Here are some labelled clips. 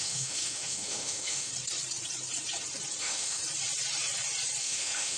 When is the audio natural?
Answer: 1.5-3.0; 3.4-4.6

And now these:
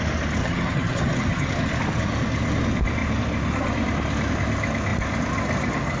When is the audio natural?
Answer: 0.0-0.4; 1.5-6.0